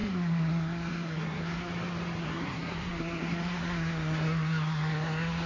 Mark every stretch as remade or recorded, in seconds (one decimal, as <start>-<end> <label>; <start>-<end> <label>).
0.0-1.7 remade; 1.7-2.2 recorded; 2.2-5.5 remade